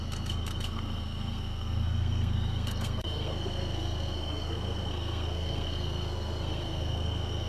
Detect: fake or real fake